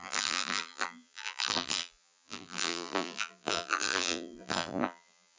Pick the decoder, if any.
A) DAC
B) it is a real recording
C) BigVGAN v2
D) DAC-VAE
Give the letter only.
C